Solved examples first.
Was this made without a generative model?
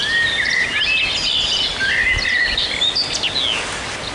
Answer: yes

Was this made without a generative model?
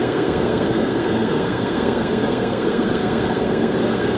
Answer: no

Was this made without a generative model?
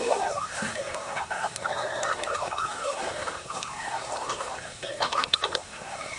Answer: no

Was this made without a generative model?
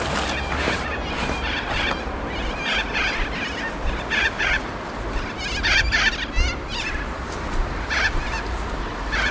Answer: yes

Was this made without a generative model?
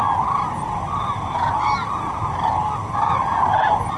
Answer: yes